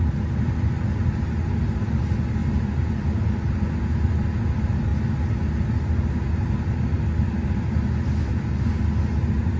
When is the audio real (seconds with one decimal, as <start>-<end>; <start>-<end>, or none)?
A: 0.0-9.6